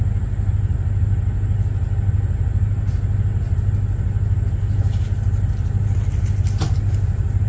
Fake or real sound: real